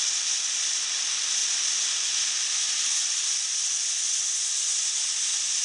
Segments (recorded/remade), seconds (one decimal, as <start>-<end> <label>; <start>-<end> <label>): 0.0-5.6 recorded